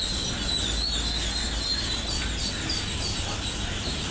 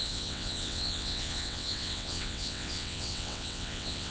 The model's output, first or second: second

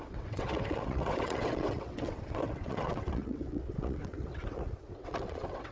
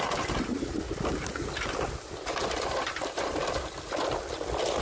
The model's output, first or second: first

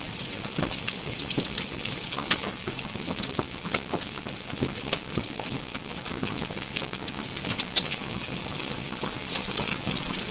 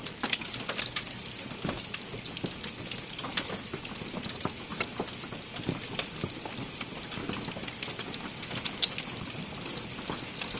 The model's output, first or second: first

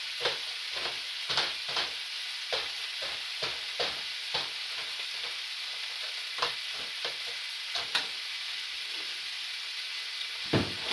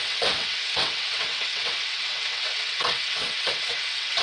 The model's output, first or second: second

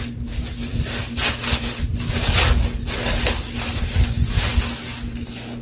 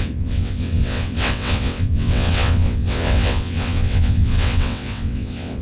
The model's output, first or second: second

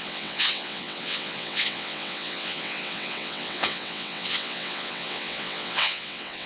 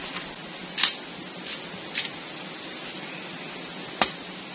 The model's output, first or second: first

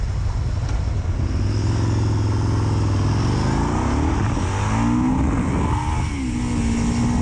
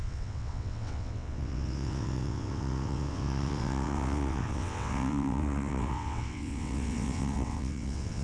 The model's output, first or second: second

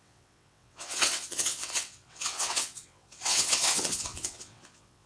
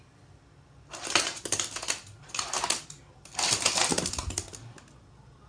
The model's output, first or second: first